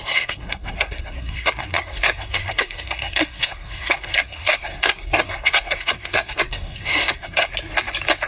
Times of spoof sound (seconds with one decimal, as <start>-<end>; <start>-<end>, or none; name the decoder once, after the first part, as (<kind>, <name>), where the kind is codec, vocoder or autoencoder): 0.0-7.5 (codec, SNAC)